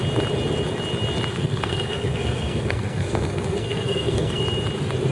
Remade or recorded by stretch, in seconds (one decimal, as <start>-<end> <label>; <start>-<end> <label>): 0.0-1.3 recorded; 1.3-4.4 remade; 4.4-5.1 recorded

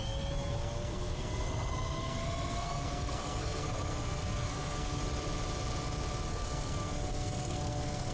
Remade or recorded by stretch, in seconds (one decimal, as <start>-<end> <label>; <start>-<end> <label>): 0.0-5.0 remade; 5.0-6.3 recorded; 6.3-8.1 remade